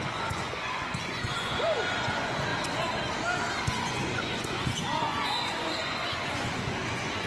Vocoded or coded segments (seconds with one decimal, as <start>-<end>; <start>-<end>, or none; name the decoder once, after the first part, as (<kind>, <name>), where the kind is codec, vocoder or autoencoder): 0.0-2.5 (vocoder, Vocos); 3.6-7.3